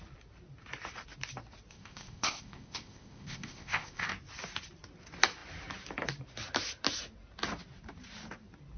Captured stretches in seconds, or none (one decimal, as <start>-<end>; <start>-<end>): 0.0-1.7; 4.1-8.8